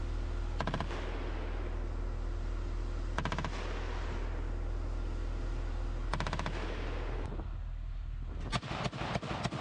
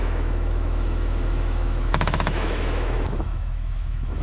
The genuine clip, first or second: first